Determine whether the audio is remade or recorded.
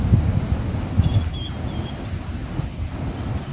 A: recorded